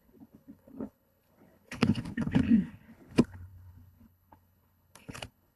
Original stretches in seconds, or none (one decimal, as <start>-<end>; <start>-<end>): none